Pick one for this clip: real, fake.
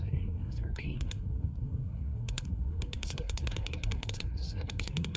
fake